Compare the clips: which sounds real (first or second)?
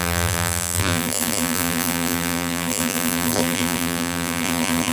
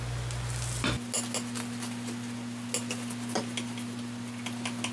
second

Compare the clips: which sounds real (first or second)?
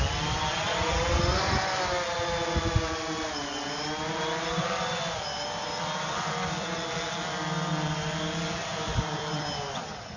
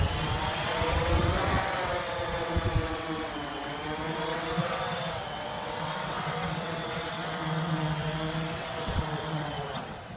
first